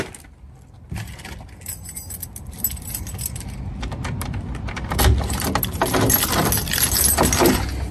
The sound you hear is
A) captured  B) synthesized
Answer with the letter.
A